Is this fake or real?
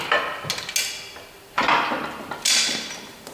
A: real